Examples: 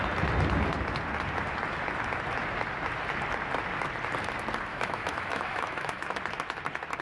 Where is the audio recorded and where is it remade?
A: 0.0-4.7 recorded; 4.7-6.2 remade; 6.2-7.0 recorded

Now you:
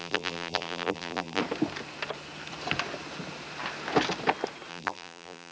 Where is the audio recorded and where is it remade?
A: 0.0-1.4 remade; 1.4-4.7 recorded; 4.7-5.5 remade

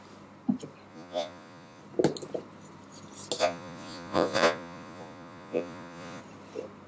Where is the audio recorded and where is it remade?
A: 0.0-0.9 recorded; 0.9-1.8 remade; 1.8-3.4 recorded; 3.4-6.2 remade; 6.2-6.9 recorded

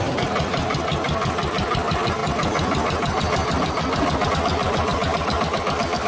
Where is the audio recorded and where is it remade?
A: 0.0-6.1 recorded

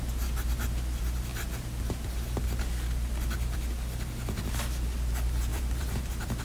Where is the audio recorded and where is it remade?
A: 0.0-5.5 recorded; 5.5-6.0 remade; 6.0-6.4 recorded

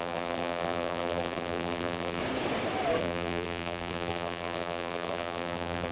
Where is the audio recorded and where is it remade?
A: 0.0-2.2 remade; 2.2-3.0 recorded; 3.0-5.9 remade

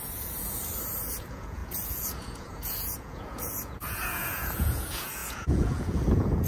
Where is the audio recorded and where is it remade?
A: 0.0-0.6 remade; 0.6-1.2 recorded; 1.2-6.5 remade